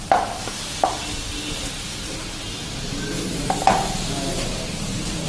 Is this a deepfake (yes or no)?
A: no